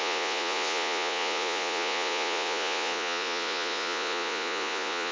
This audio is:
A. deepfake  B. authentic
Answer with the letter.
A